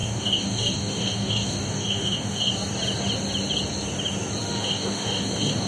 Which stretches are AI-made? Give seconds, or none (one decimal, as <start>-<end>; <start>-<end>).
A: 0.0-2.5; 4.6-5.7